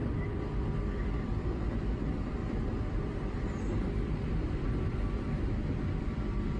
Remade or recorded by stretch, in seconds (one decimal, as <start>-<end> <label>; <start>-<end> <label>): 0.0-2.4 recorded; 2.4-6.6 remade